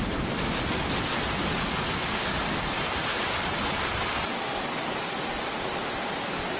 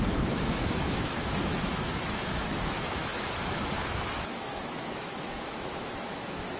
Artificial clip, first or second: second